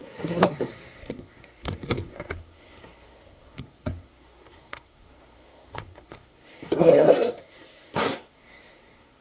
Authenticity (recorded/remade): remade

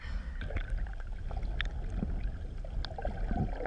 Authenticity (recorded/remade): recorded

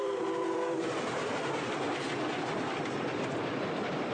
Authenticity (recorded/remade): remade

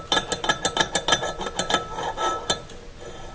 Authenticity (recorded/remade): recorded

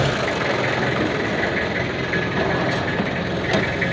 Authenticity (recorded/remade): recorded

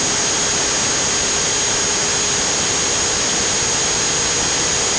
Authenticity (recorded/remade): recorded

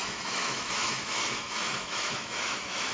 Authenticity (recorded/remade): remade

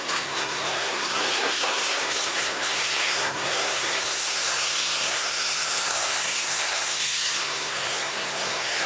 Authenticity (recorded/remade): remade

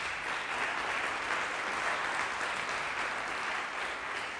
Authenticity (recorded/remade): recorded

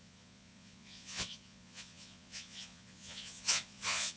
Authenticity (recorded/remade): remade